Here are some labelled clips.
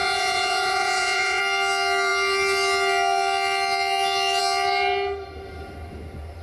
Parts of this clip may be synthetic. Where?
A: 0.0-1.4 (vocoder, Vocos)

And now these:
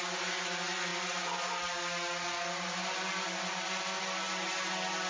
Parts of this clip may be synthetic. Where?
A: none

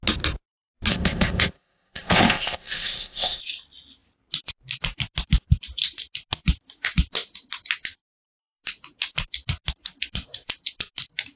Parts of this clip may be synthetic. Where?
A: 0.9-3.4 (codec, ZipCodec)

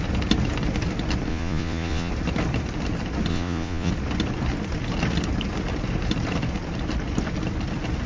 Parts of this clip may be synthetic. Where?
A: 1.3-2.1 (vocoder, Vocos); 3.3-3.9

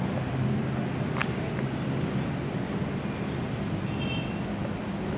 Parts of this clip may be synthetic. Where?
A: none

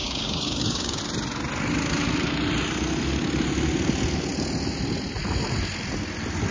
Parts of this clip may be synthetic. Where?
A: 0.0-1.0 (codec, DAC)